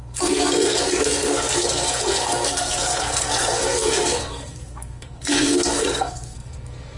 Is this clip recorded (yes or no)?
no